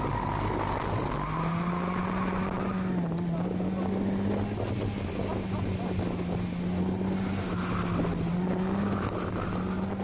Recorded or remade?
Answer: recorded